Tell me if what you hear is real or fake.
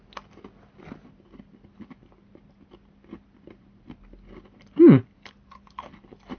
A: real